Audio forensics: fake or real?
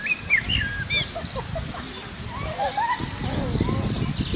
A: real